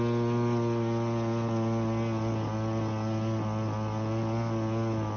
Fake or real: real